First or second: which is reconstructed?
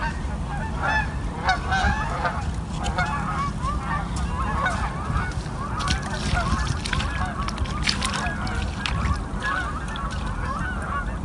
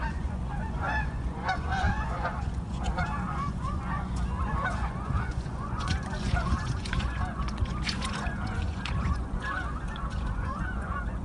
second